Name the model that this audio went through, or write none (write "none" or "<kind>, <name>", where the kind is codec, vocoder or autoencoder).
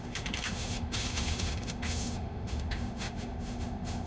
autoencoder, DAC-VAE